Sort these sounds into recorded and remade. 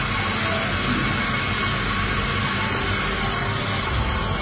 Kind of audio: recorded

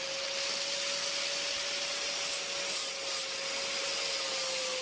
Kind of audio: recorded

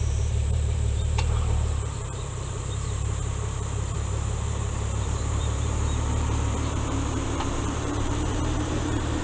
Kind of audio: remade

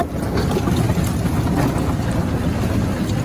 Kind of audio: recorded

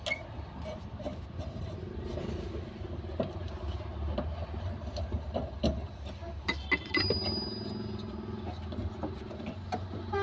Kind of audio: recorded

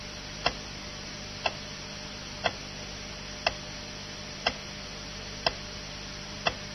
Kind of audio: recorded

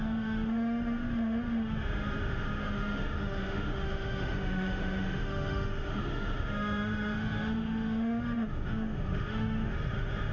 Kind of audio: remade